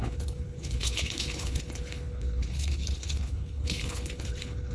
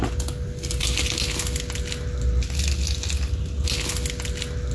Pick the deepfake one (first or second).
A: first